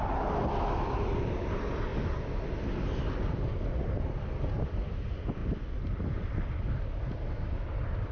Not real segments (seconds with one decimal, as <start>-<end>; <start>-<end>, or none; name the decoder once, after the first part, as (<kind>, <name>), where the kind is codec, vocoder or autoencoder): none